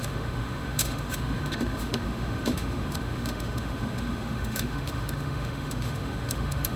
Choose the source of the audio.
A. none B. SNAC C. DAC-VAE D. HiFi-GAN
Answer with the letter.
C